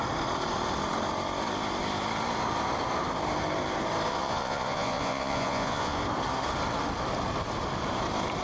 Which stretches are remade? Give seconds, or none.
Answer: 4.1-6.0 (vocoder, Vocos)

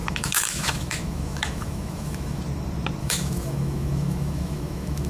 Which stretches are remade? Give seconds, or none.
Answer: 0.0-2.4 (autoencoder, DAC-VAE); 3.0-5.1

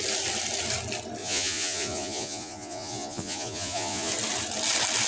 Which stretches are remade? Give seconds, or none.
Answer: 1.2-4.1 (vocoder, Vocos)

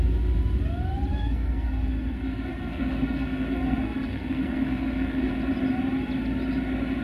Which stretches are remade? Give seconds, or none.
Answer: 1.1-5.3 (codec, SNAC)

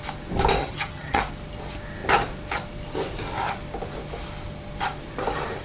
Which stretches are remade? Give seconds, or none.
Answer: 0.6-1.2 (vocoder, HiFi-GAN)

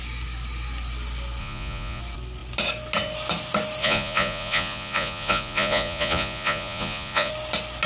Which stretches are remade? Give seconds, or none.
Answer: 1.4-2.0 (vocoder, Vocos); 3.8-7.3

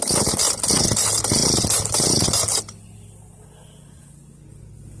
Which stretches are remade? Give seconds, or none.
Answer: none

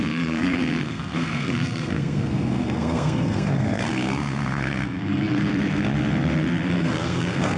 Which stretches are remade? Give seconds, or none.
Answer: 0.0-5.5 (codec, SNAC); 6.7-7.6